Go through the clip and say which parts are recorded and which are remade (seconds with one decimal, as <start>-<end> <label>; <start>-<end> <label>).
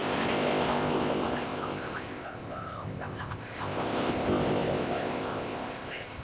0.0-6.2 remade